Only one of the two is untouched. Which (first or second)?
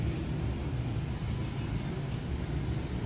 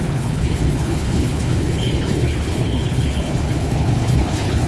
first